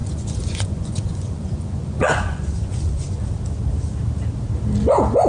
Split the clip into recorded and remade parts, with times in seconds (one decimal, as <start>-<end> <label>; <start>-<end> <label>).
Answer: 0.0-3.2 remade; 3.2-5.3 recorded